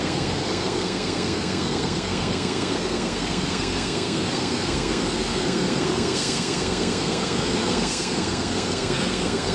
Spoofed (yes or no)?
yes